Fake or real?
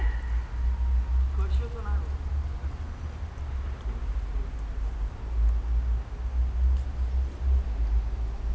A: real